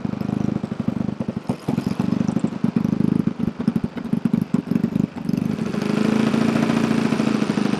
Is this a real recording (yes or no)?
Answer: yes